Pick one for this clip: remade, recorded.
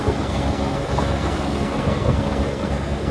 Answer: remade